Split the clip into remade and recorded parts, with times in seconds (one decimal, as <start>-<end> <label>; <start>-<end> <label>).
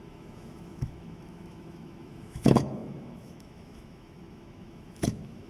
0.0-5.5 remade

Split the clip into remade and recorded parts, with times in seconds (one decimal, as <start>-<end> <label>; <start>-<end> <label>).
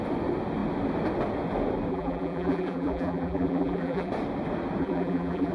0.0-1.9 recorded; 1.9-4.1 remade; 4.1-4.8 recorded; 4.8-5.5 remade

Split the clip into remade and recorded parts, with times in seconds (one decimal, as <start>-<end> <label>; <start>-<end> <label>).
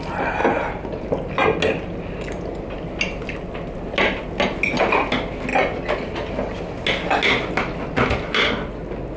0.0-9.2 recorded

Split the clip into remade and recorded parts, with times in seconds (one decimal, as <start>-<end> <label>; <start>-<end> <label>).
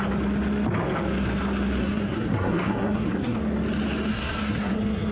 0.0-1.8 recorded; 1.8-3.4 remade; 3.4-4.1 recorded; 4.1-5.1 remade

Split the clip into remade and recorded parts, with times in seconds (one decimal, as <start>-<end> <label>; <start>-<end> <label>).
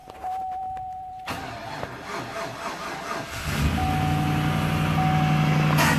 0.0-1.8 remade; 1.8-6.0 recorded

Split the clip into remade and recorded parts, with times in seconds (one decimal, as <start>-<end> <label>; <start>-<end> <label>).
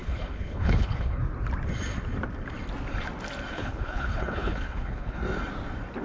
0.0-1.2 remade; 1.2-3.5 recorded; 3.5-5.2 remade; 5.2-6.0 recorded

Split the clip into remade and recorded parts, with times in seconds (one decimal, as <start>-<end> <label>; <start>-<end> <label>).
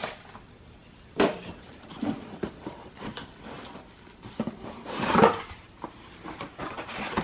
0.0-7.2 remade